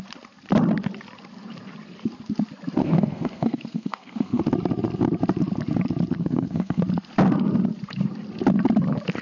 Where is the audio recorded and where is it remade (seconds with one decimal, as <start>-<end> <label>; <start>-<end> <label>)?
0.0-2.8 recorded; 2.8-4.4 remade; 4.4-6.2 recorded; 6.2-6.8 remade; 6.8-9.2 recorded